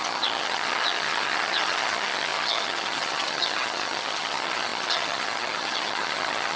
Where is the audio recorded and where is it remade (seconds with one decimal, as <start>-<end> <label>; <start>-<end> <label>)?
0.0-6.6 remade